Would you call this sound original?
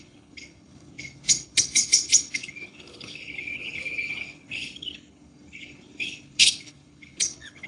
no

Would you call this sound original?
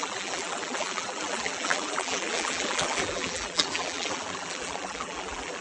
no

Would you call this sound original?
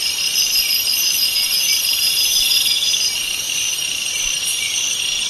no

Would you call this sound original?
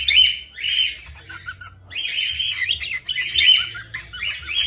yes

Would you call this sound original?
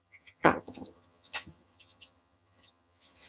no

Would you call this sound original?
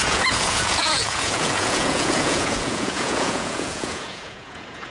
no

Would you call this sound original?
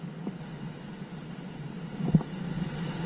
yes